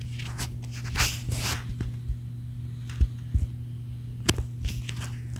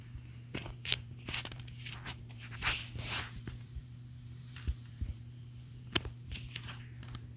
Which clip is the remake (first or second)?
second